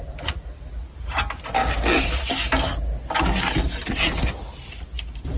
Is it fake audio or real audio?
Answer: real